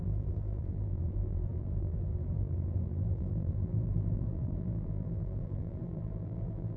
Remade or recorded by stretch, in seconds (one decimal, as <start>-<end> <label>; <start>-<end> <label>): 0.0-6.8 remade